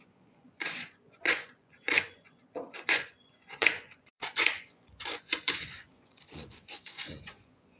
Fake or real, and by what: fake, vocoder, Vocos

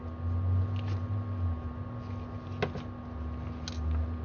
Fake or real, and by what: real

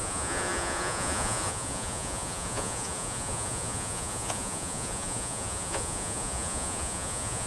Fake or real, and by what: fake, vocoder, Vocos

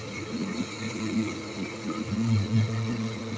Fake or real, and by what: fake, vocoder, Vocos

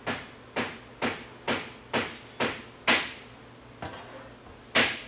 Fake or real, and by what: real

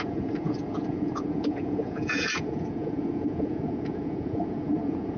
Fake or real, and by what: fake, vocoder, Vocos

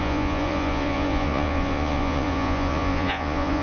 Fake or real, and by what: fake, vocoder, Vocos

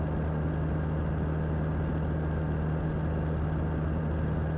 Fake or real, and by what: real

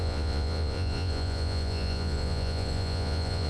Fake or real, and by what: fake, vocoder, Vocos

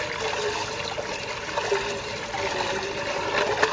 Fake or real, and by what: real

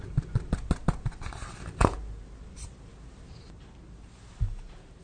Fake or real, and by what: real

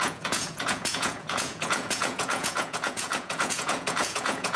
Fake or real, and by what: fake, vocoder, Vocos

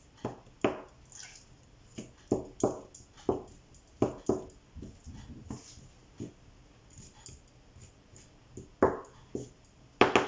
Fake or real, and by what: real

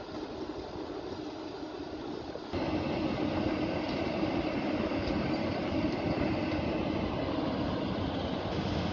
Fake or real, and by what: real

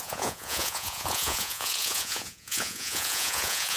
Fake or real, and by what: fake, vocoder, Vocos